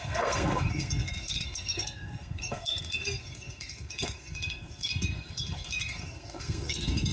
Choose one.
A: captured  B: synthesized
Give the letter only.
B